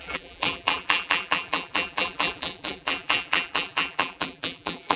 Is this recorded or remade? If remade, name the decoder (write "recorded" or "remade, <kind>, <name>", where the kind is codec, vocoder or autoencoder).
remade, vocoder, BigVGAN v2